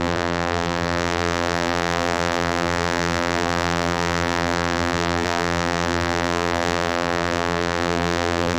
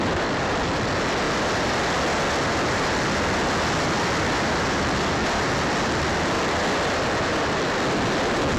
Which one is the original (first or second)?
second